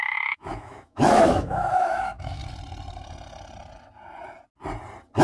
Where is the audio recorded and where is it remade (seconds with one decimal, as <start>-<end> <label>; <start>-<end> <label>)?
0.0-2.4 remade; 2.4-5.2 recorded